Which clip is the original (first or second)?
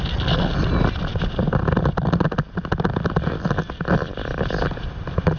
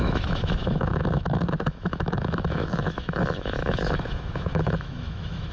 first